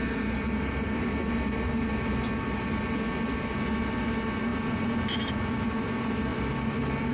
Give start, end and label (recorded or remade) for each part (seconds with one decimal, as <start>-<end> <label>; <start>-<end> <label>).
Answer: 0.0-6.3 recorded; 6.3-7.1 remade